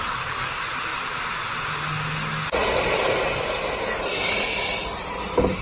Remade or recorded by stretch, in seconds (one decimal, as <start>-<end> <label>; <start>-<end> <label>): 0.0-5.6 recorded